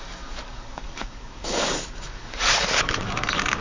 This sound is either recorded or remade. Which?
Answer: remade